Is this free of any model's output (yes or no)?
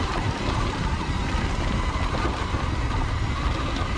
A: yes